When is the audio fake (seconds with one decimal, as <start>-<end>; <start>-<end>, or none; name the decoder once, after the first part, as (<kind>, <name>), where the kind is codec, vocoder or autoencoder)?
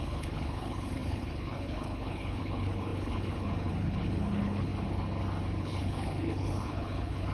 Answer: 0.0-4.7 (codec, HILCodec); 5.6-7.3